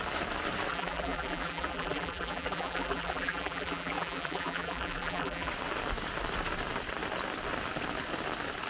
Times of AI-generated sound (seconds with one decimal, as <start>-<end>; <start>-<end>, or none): 0.7-5.5